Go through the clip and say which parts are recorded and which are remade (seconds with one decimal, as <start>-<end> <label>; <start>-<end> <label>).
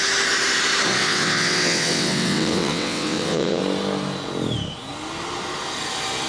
0.0-1.0 recorded; 1.0-3.6 remade; 3.6-6.3 recorded